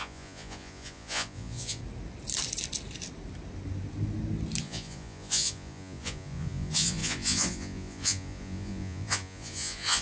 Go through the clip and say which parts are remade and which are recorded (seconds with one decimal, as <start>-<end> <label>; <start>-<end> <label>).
0.0-1.8 remade; 1.8-4.6 recorded; 4.6-10.0 remade